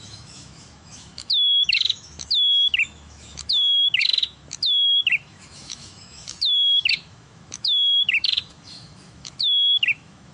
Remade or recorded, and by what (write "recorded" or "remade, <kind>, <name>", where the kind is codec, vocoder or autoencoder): remade, autoencoder, DAC-VAE